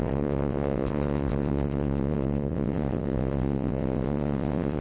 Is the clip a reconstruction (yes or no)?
yes